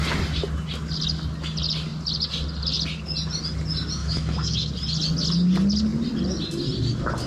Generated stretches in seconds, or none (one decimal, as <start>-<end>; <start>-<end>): 4.0-4.7